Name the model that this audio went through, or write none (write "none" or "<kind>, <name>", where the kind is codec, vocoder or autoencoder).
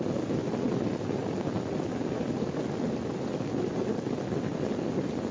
none